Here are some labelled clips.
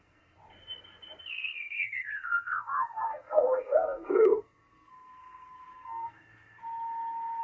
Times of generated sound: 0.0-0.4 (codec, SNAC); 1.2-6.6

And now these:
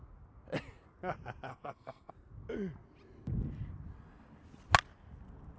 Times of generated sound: 1.5-2.1 (codec, SNAC)

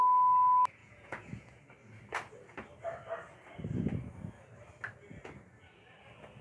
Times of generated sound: 0.8-1.6 (vocoder, Vocos)

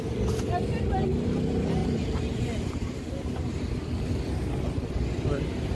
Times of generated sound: 1.8-3.5 (vocoder, BigVGAN v2)

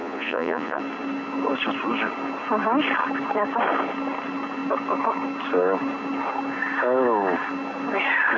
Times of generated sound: 0.0-0.8 (vocoder, Vocos)